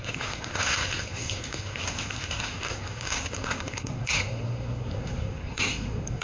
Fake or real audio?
fake